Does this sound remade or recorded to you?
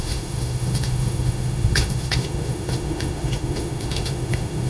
remade